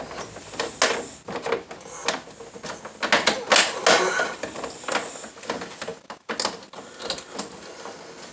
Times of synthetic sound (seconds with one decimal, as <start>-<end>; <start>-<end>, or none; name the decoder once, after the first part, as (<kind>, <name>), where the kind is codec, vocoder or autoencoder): none